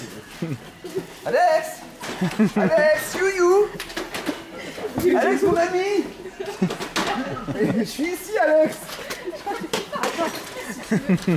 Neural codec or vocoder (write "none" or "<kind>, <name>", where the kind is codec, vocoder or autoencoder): none